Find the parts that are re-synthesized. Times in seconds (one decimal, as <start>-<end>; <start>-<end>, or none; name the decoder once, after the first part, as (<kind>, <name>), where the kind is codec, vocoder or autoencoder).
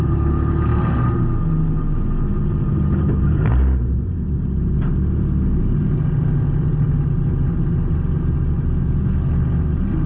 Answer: none